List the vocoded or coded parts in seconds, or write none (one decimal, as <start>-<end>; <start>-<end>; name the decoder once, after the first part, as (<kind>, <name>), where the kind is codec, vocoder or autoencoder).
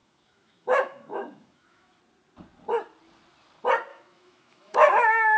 0.0-2.0 (autoencoder, DAC-VAE); 3.9-5.4